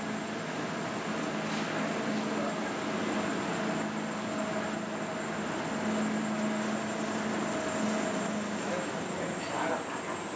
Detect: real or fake real